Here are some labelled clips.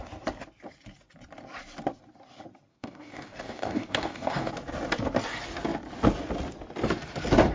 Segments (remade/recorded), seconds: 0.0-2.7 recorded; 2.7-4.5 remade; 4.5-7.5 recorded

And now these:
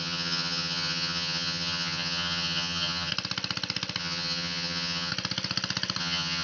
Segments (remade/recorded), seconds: 0.0-3.1 remade; 3.1-4.0 recorded; 4.0-5.1 remade; 5.1-6.0 recorded; 6.0-6.4 remade

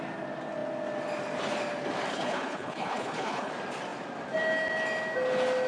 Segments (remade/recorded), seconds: 0.0-2.1 recorded; 2.1-3.5 remade; 3.5-5.7 recorded

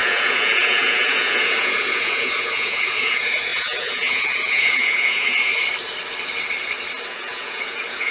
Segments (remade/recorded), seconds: 0.0-5.5 remade; 5.5-7.1 recorded; 7.1-8.1 remade